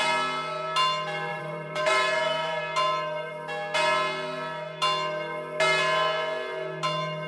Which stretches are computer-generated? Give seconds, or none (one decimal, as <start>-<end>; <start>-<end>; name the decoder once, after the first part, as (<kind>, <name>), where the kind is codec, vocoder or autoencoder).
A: 1.3-2.6 (vocoder, BigVGAN v2)